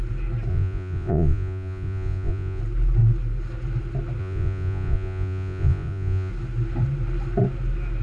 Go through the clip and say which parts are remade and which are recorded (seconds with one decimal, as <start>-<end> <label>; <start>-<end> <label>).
0.0-0.5 recorded; 0.5-2.6 remade; 2.6-4.2 recorded; 4.2-6.3 remade; 6.3-8.0 recorded